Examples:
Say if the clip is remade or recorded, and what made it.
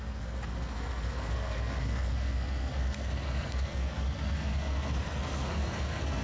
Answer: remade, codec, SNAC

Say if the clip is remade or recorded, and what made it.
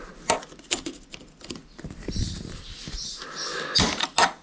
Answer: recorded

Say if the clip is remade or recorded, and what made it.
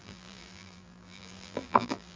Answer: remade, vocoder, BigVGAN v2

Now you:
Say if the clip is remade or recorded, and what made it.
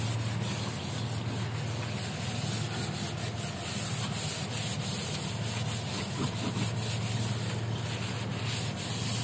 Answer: recorded